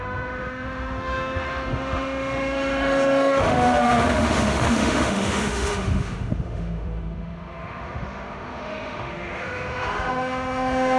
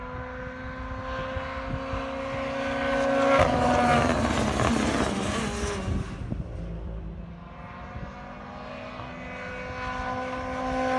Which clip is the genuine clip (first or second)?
second